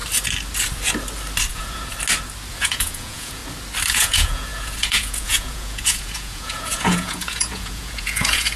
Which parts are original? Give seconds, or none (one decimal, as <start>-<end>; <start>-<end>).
0.0-1.5; 1.9-2.5; 3.4-3.9